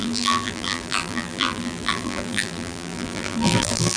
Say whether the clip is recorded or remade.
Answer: remade